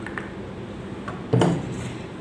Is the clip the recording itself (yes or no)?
yes